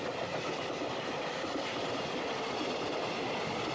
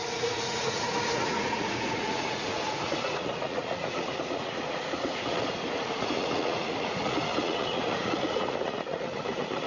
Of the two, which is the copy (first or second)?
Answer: second